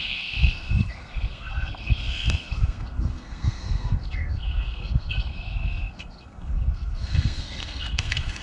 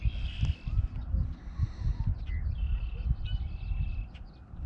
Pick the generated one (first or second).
first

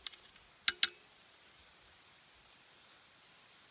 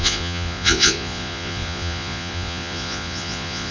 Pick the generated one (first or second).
second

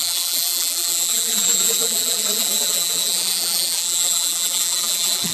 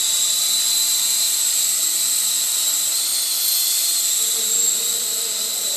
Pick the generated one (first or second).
first